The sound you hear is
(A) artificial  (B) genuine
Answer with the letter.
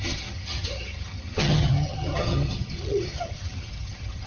A